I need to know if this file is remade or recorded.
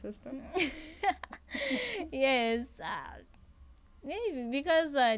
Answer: recorded